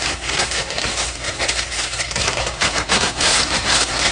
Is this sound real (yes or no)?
no